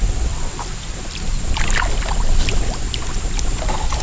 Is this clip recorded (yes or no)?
yes